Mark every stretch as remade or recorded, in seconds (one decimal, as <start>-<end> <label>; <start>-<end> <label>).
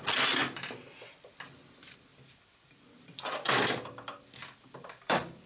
0.0-0.4 recorded; 0.4-1.3 remade; 1.3-2.1 recorded; 2.1-5.5 remade